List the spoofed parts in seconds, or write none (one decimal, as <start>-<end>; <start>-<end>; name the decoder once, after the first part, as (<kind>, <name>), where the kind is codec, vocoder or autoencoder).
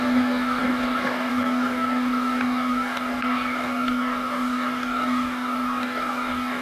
0.0-6.6 (codec, DAC)